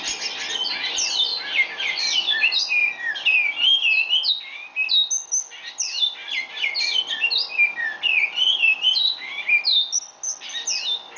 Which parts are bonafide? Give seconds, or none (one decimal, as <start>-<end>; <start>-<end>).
0.0-1.3; 2.0-6.2; 6.7-8.5; 9.6-11.2